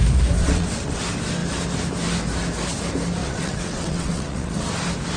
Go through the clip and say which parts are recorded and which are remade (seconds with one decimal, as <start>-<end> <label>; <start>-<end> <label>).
0.0-0.4 recorded; 0.4-1.0 remade; 1.0-3.2 recorded; 3.2-4.7 remade; 4.7-5.2 recorded